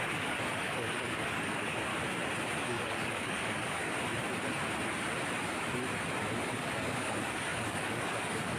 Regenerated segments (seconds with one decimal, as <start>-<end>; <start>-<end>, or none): 0.0-1.9; 2.6-3.8; 6.5-8.6